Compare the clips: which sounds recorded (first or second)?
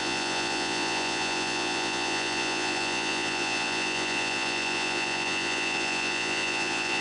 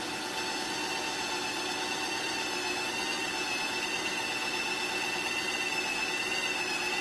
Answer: second